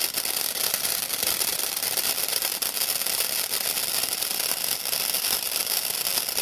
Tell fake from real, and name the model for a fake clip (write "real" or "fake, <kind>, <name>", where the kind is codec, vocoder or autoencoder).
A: real